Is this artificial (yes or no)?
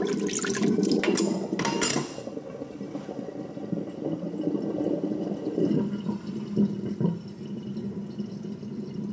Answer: no